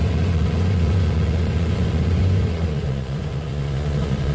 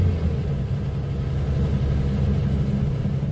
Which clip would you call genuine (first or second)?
second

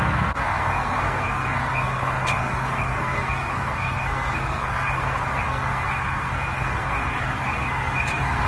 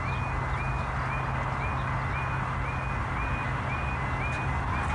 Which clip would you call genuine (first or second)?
second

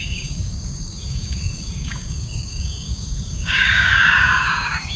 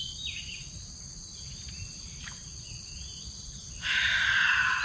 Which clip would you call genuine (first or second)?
second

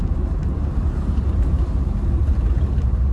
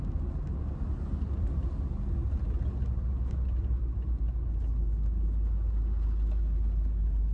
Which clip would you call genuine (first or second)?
second